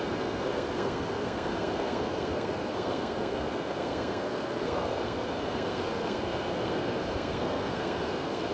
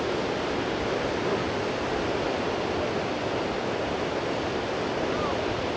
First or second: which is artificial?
first